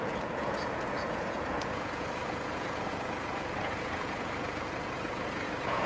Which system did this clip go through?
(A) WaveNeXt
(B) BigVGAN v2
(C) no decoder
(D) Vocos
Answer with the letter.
D